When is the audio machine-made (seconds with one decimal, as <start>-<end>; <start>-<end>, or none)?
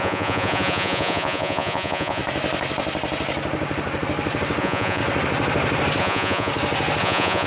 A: 0.0-2.2; 4.6-5.0; 6.0-6.5; 7.0-7.5